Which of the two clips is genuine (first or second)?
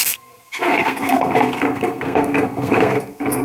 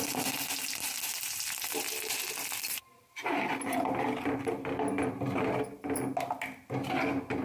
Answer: second